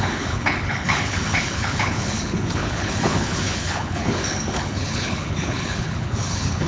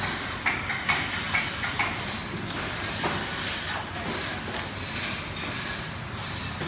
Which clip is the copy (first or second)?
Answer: first